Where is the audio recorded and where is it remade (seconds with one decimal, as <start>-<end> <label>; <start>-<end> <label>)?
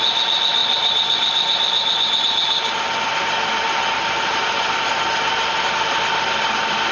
0.0-6.9 recorded